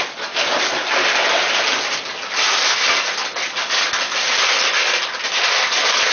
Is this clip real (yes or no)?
yes